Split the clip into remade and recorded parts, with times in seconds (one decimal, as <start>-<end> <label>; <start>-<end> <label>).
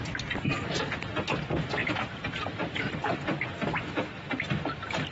0.0-1.8 recorded; 1.8-2.9 remade; 2.9-5.1 recorded